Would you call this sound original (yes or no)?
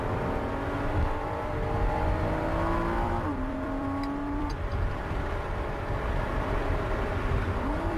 no